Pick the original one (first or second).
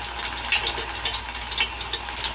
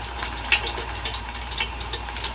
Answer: first